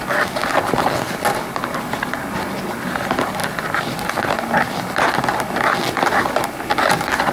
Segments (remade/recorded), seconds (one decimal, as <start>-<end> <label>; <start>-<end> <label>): 0.0-7.3 recorded